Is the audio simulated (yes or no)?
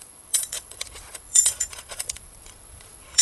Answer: yes